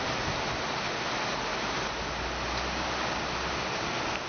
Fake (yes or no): no